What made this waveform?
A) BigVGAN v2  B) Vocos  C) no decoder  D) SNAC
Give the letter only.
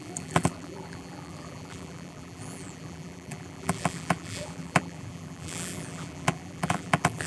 A